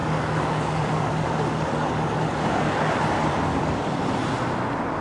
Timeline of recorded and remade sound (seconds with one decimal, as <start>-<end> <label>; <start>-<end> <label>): 0.0-3.0 remade; 3.0-3.5 recorded; 3.5-4.0 remade; 4.0-5.0 recorded